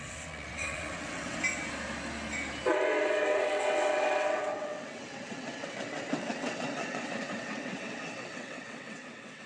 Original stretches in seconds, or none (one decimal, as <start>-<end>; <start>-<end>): 1.4-2.7